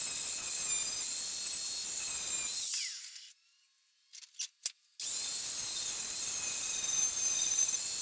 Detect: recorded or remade recorded